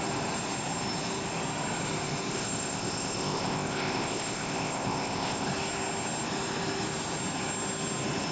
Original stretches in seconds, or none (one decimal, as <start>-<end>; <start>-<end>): 0.0-2.3; 5.5-8.3

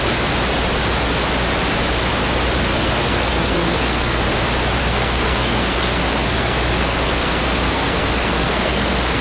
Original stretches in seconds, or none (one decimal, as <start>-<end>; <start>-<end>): 0.0-2.7; 4.2-4.8

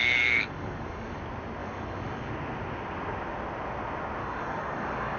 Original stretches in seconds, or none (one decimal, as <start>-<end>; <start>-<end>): 1.2-1.6; 2.3-4.2

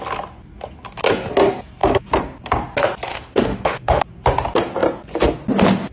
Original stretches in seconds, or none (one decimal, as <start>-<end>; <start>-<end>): 0.0-3.1; 4.0-5.9

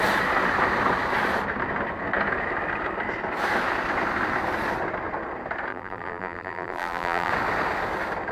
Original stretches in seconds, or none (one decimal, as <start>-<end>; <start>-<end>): 0.0-5.7; 7.3-8.3

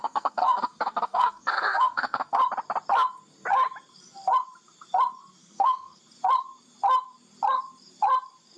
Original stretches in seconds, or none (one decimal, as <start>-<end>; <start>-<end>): 2.4-5.4; 6.0-8.6

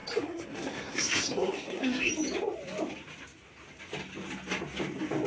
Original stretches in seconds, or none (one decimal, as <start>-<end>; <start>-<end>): 2.1-5.3

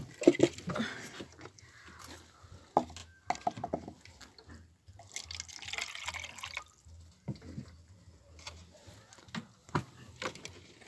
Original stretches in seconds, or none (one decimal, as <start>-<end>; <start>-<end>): 0.0-10.9